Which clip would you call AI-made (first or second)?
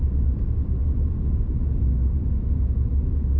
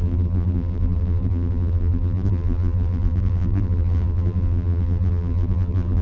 second